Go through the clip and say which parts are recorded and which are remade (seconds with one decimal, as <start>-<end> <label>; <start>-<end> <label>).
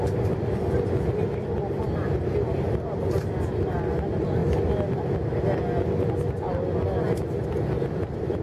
0.0-8.4 recorded